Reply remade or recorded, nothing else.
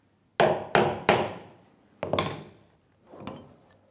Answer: recorded